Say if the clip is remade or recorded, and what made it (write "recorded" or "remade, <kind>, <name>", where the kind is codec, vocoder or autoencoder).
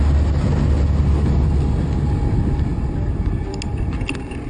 recorded